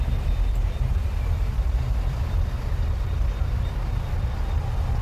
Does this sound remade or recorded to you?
remade